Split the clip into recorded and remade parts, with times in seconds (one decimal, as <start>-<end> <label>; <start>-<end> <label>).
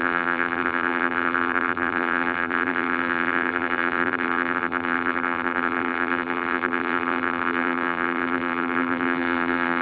0.0-9.8 remade